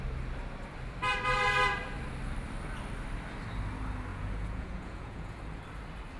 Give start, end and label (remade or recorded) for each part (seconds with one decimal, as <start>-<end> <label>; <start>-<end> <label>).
0.0-4.1 recorded; 4.1-5.4 remade; 5.4-6.2 recorded